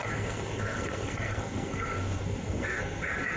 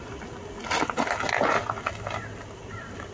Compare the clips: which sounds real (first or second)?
second